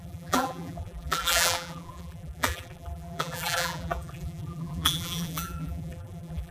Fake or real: fake